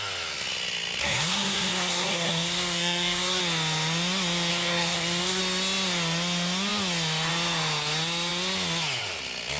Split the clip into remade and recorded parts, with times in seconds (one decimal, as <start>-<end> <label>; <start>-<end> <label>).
0.0-1.0 recorded; 1.0-3.4 remade; 3.4-4.5 recorded; 4.5-5.4 remade; 5.4-9.6 recorded